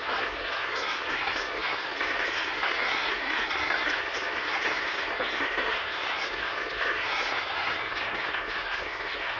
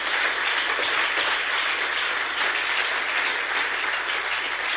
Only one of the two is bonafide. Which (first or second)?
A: second